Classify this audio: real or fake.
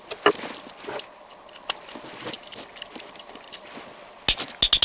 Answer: real